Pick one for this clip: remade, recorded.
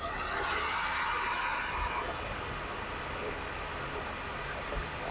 recorded